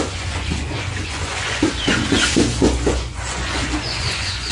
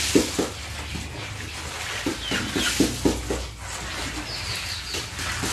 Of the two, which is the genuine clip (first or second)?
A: second